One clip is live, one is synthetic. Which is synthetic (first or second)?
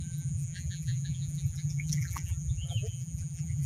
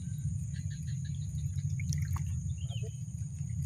first